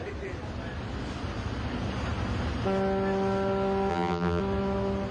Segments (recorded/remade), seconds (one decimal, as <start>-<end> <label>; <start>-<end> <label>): 0.0-3.9 recorded; 3.9-4.4 remade; 4.4-5.1 recorded